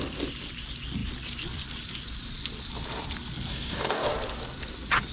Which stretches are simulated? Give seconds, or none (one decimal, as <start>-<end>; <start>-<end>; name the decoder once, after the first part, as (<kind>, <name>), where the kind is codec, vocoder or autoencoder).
3.5-4.1 (codec, DAC)

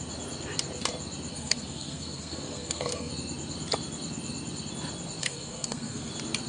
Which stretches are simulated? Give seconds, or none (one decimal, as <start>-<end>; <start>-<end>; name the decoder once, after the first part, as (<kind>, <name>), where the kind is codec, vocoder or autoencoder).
1.3-3.1 (codec, SNAC); 5.2-6.1

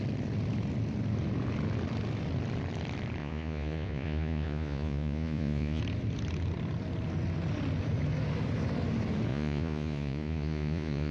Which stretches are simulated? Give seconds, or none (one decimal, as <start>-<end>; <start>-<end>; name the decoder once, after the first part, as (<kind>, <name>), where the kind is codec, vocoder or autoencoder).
3.2-5.8 (vocoder, Vocos); 9.3-11.1

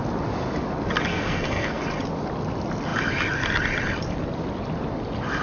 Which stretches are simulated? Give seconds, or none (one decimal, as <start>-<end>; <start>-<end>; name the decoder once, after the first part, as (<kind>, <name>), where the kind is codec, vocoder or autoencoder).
1.1-1.8 (codec, SNAC)

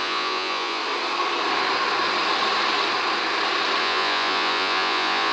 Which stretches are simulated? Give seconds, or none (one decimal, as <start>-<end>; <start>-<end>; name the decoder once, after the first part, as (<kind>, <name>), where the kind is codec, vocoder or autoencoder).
0.0-0.8 (vocoder, Vocos); 3.8-5.3

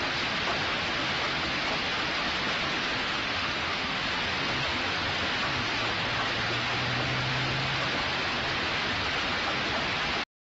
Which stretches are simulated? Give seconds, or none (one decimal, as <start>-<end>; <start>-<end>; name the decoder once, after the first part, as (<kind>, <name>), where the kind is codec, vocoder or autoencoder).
3.0-4.0 (autoencoder, DAC-VAE)

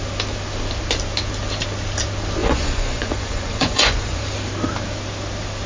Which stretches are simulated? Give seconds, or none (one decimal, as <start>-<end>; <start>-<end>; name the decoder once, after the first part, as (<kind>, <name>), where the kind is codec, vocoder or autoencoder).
2.4-4.2 (vocoder, Vocos)